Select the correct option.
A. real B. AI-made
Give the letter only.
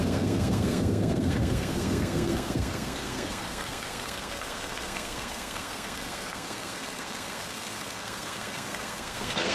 B